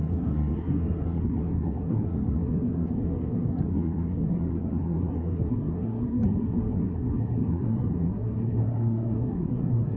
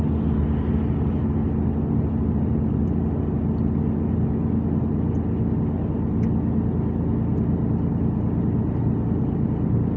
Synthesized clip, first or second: first